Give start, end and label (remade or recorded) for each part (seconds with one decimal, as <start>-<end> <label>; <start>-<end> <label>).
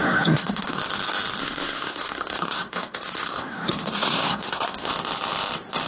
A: 0.0-0.8 remade; 0.8-1.4 recorded; 1.4-4.9 remade; 4.9-5.9 recorded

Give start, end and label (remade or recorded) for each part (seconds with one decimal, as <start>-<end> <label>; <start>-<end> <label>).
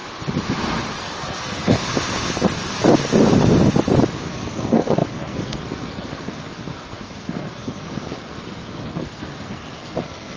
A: 0.0-1.0 recorded; 1.0-1.8 remade; 1.8-4.3 recorded; 4.3-10.4 remade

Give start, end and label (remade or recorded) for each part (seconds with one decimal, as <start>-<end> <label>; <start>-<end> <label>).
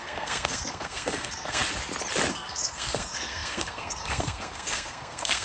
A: 0.0-1.6 remade; 1.6-2.3 recorded; 2.3-5.4 remade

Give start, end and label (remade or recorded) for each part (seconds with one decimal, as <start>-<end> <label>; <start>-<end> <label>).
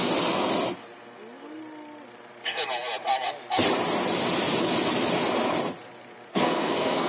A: 0.0-6.3 recorded; 6.3-7.1 remade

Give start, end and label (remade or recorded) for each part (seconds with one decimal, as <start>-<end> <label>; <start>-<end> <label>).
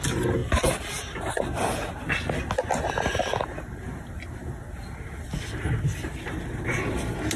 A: 0.0-7.4 recorded